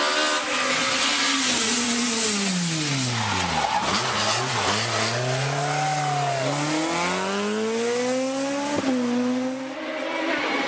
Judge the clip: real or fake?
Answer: real